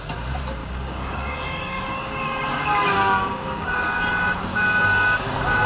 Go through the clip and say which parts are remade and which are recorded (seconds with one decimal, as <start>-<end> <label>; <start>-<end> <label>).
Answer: 0.0-0.6 recorded; 0.6-4.0 remade; 4.0-4.5 recorded; 4.5-5.3 remade; 5.3-5.7 recorded